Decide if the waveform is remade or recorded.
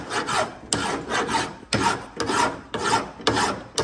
recorded